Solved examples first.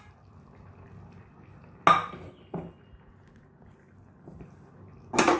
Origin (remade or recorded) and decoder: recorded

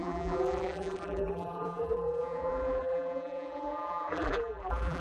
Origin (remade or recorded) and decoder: remade, vocoder, BigVGAN v2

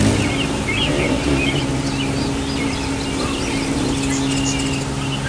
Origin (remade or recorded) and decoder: recorded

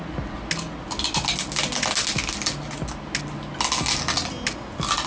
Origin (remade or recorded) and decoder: recorded